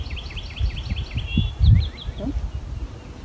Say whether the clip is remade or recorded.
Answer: recorded